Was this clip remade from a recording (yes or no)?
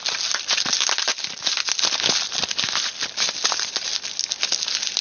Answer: no